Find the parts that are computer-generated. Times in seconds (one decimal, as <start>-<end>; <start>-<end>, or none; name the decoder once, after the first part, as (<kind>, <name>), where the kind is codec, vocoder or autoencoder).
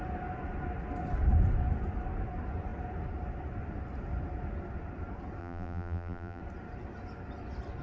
5.4-6.4 (vocoder, BigVGAN v2)